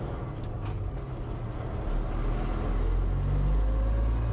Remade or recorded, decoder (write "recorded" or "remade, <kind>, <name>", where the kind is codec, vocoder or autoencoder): recorded